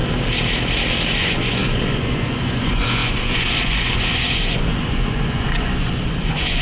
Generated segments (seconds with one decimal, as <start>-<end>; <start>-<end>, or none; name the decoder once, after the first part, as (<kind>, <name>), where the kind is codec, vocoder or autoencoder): 1.2-6.6 (vocoder, Vocos)